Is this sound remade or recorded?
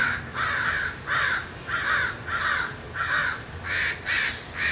recorded